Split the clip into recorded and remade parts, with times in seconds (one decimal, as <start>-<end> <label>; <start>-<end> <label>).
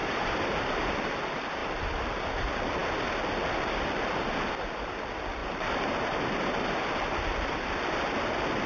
0.0-0.8 remade; 0.8-1.6 recorded; 1.6-2.1 remade; 2.1-5.4 recorded; 5.4-6.7 remade; 6.7-8.7 recorded